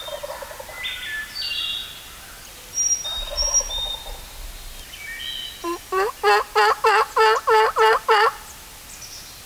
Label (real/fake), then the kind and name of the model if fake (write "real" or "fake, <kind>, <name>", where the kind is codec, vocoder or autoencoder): real